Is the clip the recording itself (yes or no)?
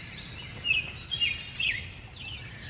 yes